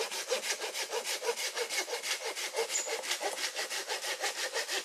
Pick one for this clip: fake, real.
real